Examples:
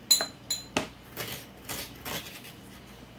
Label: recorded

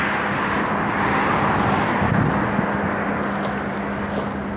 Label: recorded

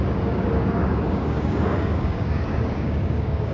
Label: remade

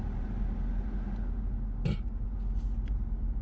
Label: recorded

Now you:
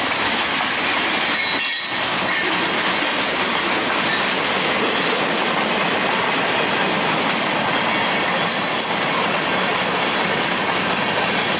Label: recorded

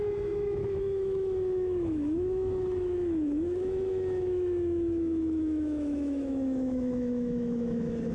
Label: remade